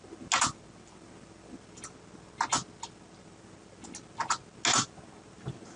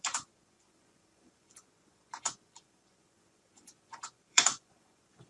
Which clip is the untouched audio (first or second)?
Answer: first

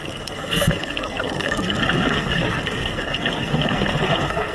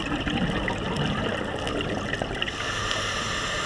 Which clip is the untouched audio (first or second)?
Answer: second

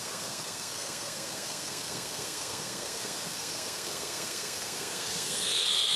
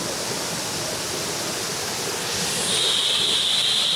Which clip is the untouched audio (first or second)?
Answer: second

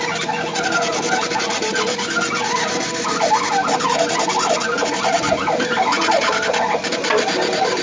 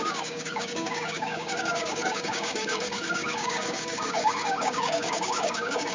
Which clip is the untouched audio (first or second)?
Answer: first